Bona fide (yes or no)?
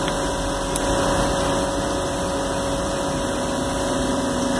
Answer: yes